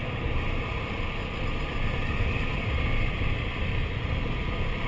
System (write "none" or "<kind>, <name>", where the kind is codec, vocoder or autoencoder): none